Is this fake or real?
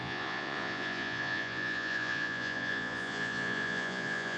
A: fake